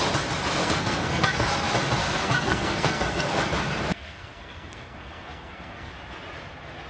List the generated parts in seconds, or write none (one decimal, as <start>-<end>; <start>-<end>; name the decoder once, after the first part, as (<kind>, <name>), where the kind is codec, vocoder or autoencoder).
0.6-1.5 (codec, SNAC); 2.0-3.4; 3.9-5.9